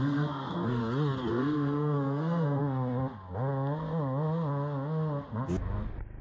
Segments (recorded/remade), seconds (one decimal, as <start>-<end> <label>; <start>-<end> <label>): 0.0-0.8 remade; 0.8-1.3 recorded; 1.3-2.6 remade; 2.6-6.2 recorded